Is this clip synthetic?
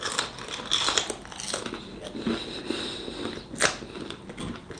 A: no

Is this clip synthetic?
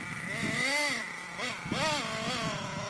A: no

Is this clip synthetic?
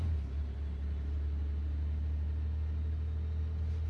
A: no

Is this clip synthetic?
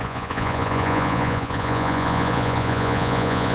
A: yes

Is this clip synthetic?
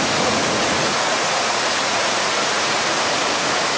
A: yes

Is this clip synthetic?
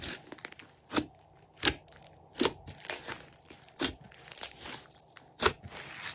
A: no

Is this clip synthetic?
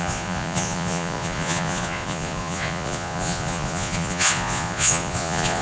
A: yes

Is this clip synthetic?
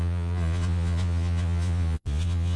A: yes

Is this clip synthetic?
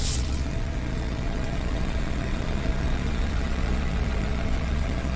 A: yes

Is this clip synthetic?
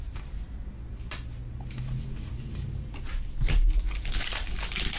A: no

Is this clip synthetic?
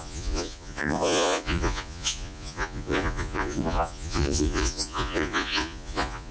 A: yes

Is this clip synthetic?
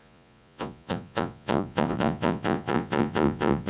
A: yes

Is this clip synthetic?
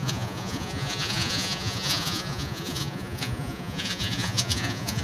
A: yes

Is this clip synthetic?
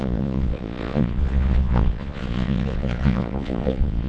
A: yes